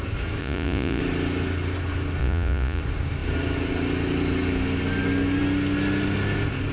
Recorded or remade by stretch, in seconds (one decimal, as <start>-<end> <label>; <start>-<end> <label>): 0.0-0.4 recorded; 0.4-1.0 remade; 1.0-2.2 recorded; 2.2-2.8 remade; 2.8-6.7 recorded

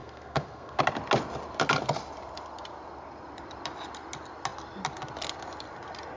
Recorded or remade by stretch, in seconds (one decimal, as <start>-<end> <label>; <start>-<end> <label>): 0.0-0.8 remade; 0.8-6.2 recorded

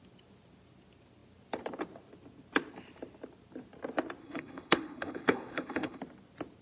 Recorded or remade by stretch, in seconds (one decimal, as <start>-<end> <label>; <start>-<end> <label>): 0.0-4.2 recorded; 4.2-6.0 remade; 6.0-6.6 recorded

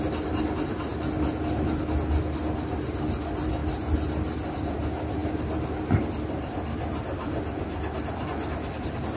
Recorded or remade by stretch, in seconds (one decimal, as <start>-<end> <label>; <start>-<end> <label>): 0.0-9.2 recorded